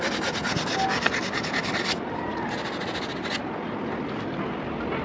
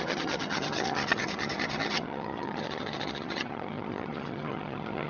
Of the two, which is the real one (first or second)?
first